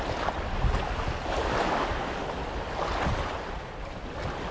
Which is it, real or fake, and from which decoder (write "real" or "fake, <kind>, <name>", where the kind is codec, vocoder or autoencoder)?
real